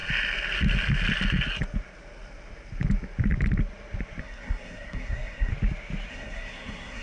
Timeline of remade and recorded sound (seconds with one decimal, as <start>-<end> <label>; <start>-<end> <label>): 0.0-4.2 recorded; 4.2-5.5 remade; 5.5-6.1 recorded; 6.1-7.0 remade